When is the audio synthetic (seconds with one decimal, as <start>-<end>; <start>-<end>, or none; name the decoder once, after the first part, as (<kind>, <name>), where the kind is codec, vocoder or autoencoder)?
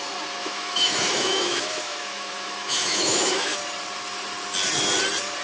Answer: 0.4-3.6 (autoencoder, DAC-VAE)